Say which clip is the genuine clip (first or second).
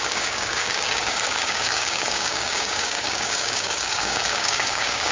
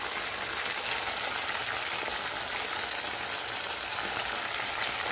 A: second